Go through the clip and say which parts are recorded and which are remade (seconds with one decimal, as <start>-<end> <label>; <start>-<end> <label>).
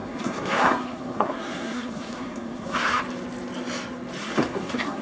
0.0-3.0 remade; 3.0-4.2 recorded; 4.2-5.0 remade